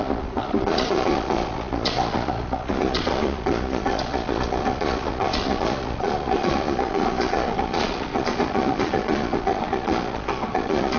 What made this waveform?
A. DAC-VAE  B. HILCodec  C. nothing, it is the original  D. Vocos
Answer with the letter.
D